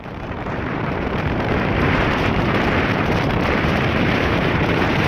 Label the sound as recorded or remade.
remade